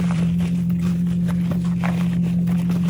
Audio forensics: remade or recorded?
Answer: remade